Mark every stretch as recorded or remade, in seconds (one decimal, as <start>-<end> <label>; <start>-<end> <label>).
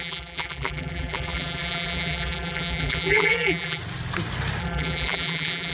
0.0-3.8 remade; 3.8-4.6 recorded; 4.6-5.7 remade